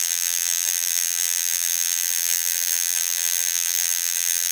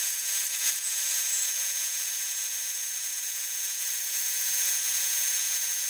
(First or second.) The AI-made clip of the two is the first